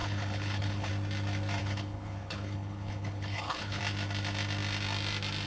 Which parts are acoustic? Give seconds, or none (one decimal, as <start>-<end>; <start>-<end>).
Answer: 0.9-1.6; 3.8-5.5

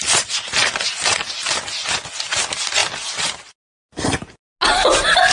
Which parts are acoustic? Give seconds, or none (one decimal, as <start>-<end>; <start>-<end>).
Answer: 0.0-5.3

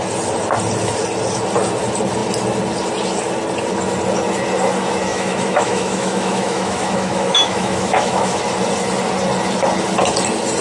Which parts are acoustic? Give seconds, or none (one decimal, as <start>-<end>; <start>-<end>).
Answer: 0.0-5.1; 8.4-10.6

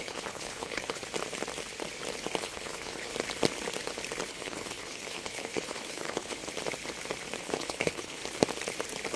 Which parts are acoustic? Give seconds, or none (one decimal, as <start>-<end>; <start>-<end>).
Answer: 1.0-2.4; 3.1-4.3; 6.4-7.4; 8.2-9.2

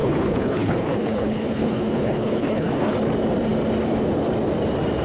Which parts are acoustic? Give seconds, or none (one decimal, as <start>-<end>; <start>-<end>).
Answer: 2.9-5.0

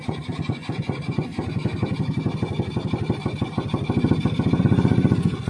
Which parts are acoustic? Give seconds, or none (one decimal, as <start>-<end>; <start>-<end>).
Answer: 1.3-4.6

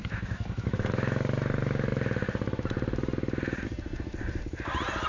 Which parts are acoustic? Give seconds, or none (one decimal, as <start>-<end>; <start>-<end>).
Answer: 0.9-5.1